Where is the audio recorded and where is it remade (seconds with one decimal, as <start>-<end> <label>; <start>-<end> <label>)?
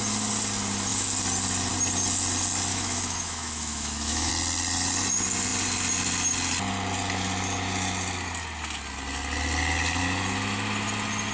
0.0-2.7 recorded; 2.7-4.3 remade; 4.3-11.3 recorded